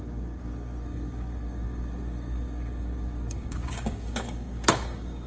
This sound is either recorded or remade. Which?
remade